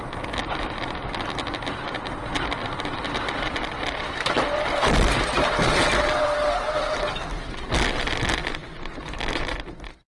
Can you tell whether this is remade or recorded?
recorded